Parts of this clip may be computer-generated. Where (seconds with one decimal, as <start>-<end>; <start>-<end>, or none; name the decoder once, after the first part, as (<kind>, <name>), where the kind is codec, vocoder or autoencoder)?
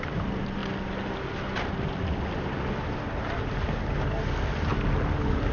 none